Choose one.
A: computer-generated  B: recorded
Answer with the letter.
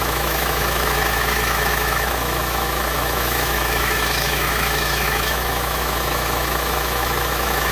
A